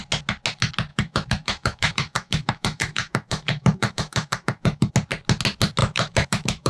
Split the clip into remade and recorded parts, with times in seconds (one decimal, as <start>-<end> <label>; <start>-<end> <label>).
0.0-0.9 recorded; 0.9-4.9 remade; 4.9-5.8 recorded; 5.8-6.7 remade